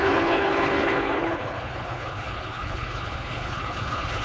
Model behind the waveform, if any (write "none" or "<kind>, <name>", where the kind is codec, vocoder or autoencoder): codec, HILCodec